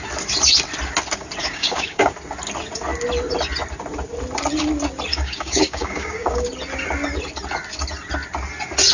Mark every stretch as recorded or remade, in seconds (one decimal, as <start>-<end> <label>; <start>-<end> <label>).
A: 0.0-1.4 recorded; 1.4-2.1 remade; 2.1-5.1 recorded; 5.1-6.5 remade; 6.5-8.9 recorded